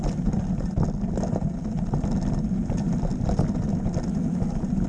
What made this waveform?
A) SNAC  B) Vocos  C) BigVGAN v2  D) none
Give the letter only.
D